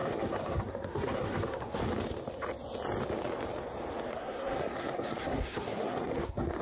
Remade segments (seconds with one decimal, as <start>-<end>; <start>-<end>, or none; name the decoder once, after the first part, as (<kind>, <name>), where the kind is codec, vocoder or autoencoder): 0.0-1.8 (codec, SNAC); 4.1-6.6